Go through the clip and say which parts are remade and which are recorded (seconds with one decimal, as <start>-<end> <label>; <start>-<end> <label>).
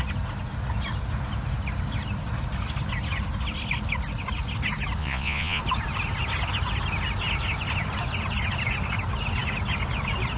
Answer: 0.0-5.0 recorded; 5.0-5.6 remade; 5.6-10.4 recorded